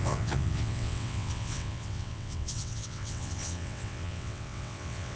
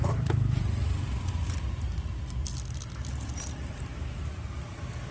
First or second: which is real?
second